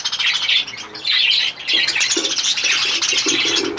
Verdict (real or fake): real